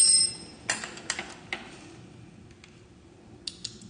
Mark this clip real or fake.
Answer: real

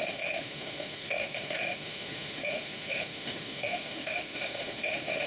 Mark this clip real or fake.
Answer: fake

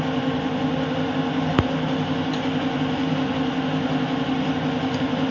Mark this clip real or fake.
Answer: real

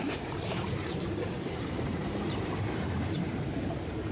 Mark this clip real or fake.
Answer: fake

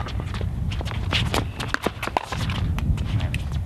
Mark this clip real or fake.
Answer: real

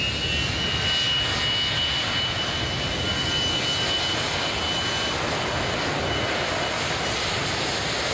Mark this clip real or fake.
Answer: real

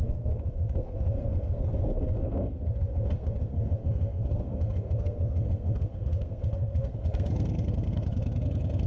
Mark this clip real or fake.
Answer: fake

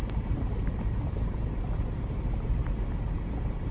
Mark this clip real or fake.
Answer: real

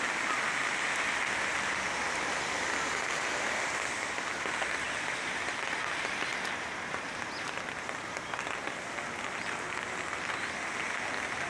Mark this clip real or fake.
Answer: real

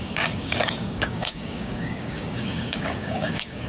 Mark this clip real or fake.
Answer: fake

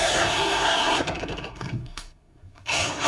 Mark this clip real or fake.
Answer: fake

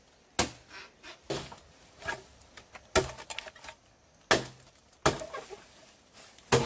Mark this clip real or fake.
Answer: real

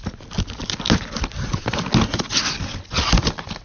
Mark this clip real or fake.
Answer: real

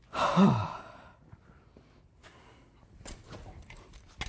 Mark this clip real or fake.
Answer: real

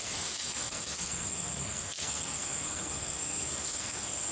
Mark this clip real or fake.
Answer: fake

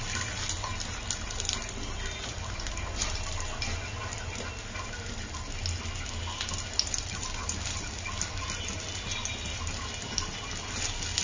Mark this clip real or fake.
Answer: real